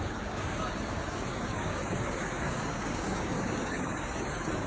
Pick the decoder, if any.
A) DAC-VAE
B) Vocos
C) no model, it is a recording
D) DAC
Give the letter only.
D